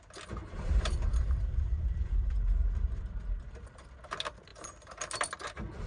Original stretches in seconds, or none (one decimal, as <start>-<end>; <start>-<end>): 0.0-0.4; 3.9-4.5; 5.0-5.9